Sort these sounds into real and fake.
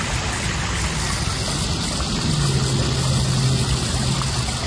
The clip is real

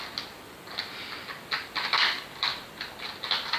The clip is real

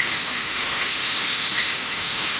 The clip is fake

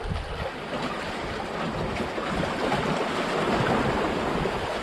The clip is real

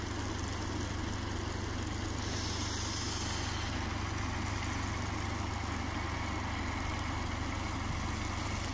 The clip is real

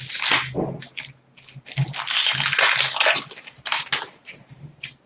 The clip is real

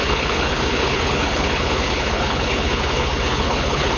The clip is fake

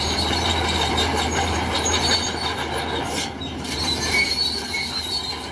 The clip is fake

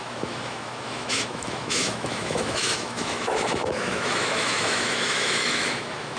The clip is fake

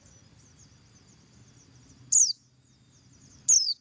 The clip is real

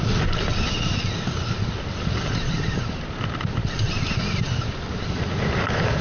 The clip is real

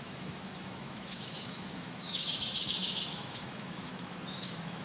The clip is fake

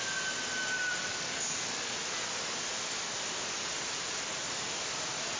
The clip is real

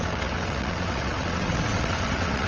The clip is fake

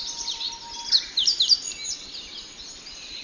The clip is real